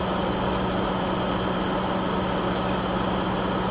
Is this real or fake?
real